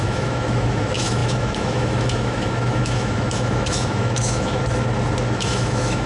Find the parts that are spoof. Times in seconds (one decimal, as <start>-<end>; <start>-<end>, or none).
0.0-4.6; 5.3-6.1